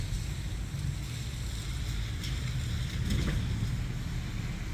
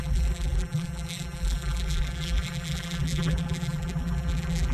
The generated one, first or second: second